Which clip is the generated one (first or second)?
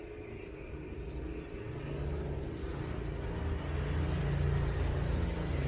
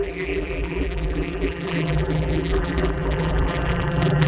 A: second